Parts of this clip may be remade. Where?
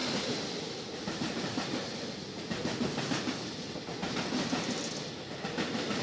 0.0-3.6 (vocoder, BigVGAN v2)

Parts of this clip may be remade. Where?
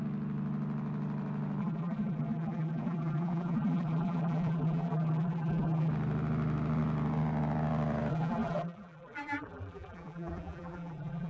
1.6-5.9 (vocoder, BigVGAN v2); 8.1-11.3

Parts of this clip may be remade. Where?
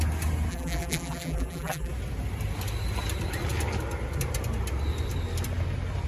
0.5-1.9 (vocoder, BigVGAN v2)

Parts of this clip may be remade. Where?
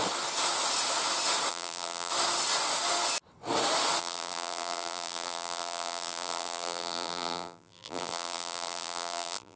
1.5-2.1 (vocoder, BigVGAN v2); 4.0-9.6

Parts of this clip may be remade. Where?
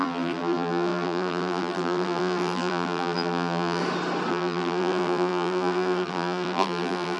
0.0-3.8 (vocoder, BigVGAN v2); 4.3-7.2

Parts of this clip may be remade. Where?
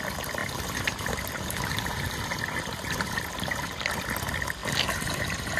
0.4-3.8 (vocoder, BigVGAN v2); 4.6-5.6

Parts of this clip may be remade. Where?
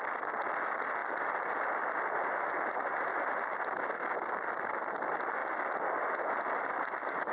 1.0-2.2 (vocoder, BigVGAN v2); 5.4-5.9